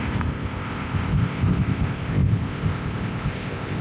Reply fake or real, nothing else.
fake